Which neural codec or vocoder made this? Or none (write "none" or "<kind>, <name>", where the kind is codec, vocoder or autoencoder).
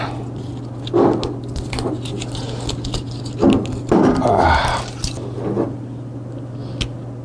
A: none